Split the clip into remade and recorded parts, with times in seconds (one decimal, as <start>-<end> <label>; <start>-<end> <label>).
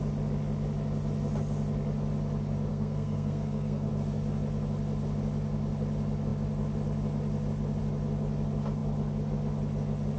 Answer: 0.0-2.7 recorded; 2.7-3.9 remade; 3.9-10.2 recorded